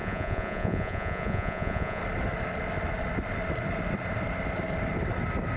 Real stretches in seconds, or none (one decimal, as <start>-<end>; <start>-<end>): 2.0-5.6